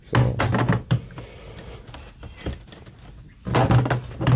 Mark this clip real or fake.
real